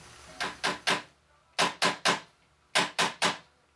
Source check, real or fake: real